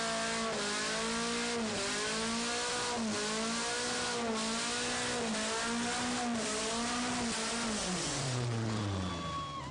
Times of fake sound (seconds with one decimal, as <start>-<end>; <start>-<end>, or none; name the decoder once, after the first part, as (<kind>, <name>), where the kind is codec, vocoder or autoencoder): 7.8-9.1 (vocoder, Vocos)